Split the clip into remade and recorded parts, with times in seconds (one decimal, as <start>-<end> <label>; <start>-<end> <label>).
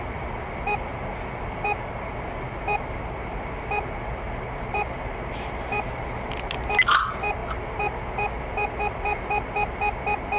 0.0-10.4 recorded